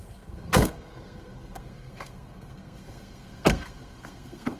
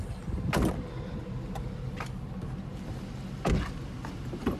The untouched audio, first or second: second